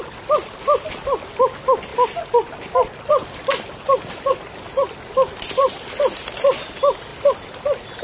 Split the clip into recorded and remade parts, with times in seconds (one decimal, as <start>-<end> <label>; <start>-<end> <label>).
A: 0.0-8.0 recorded